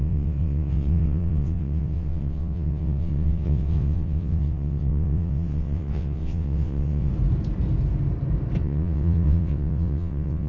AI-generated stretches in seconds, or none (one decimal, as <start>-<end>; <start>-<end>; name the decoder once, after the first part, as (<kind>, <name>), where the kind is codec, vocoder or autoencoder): 0.0-7.1 (vocoder, WaveNeXt); 8.6-10.5